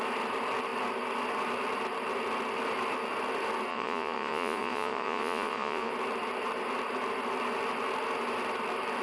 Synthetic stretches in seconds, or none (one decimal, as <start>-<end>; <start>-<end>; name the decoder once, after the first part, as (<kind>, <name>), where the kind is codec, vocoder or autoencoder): 3.7-5.9 (vocoder, Vocos)